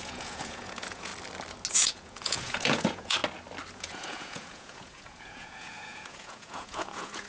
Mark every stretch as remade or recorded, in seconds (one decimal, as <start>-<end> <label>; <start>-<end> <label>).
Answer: 0.0-1.1 remade; 1.1-1.7 recorded; 1.7-3.2 remade; 3.2-3.7 recorded; 3.7-7.3 remade